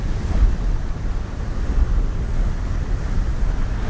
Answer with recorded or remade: recorded